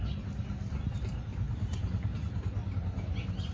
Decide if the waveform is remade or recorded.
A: recorded